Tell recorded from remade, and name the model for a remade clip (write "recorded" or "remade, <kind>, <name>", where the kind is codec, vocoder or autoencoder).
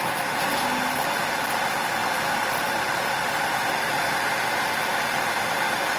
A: recorded